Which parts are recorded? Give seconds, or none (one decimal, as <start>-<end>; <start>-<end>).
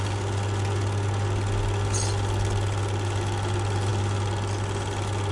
0.0-5.3